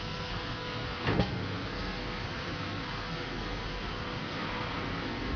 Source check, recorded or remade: remade